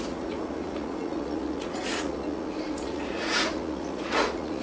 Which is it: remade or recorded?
remade